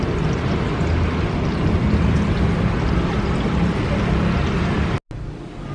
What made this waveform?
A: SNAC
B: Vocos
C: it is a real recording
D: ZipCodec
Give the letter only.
C